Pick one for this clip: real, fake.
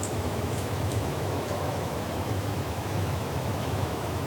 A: fake